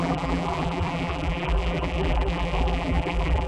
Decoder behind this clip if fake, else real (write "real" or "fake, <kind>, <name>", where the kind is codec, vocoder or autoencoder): fake, vocoder, BigVGAN v2